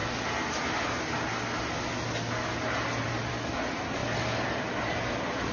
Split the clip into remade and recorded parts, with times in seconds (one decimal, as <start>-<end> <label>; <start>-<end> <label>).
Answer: 0.0-5.5 recorded